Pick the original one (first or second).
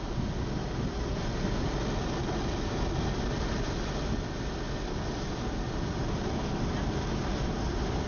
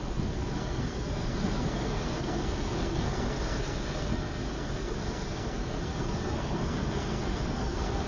first